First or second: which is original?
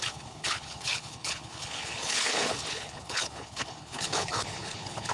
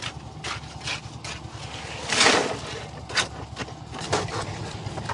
second